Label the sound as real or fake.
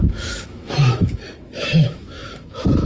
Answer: fake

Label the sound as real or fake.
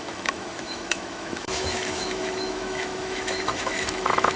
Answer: fake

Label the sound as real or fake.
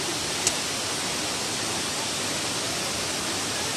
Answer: real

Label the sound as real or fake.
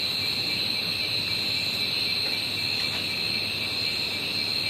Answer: real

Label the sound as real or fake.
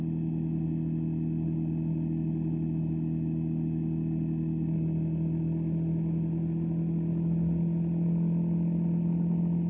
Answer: real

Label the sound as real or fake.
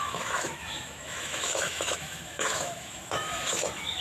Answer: fake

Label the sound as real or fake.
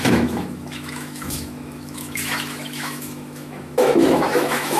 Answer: fake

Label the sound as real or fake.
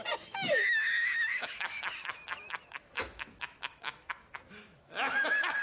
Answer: fake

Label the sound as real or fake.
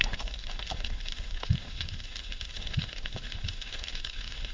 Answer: fake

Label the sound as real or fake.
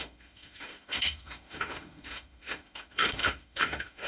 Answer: fake